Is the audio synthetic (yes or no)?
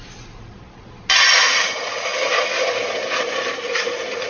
no